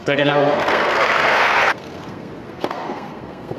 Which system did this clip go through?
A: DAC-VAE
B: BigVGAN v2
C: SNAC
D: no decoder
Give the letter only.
C